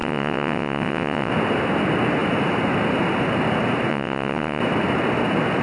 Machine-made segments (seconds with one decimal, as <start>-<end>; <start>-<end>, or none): 0.0-1.3; 3.9-4.6